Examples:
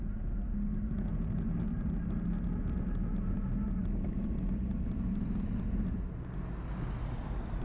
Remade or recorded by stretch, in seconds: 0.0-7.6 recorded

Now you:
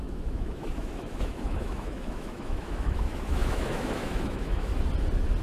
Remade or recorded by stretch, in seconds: 0.0-4.7 remade; 4.7-5.4 recorded

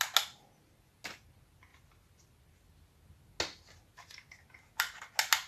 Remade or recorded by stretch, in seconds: 0.0-5.5 recorded

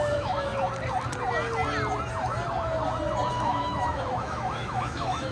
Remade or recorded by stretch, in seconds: 0.0-0.5 remade; 0.5-3.3 recorded; 3.3-5.3 remade

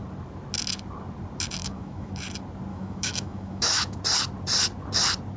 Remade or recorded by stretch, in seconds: 0.0-1.6 recorded; 1.6-2.1 remade; 2.1-2.7 recorded; 2.7-4.0 remade; 4.0-5.4 recorded

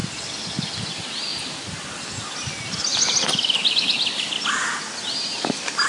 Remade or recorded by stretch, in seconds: 0.0-5.9 recorded